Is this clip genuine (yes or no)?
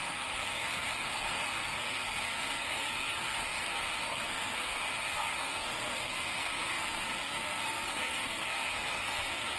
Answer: no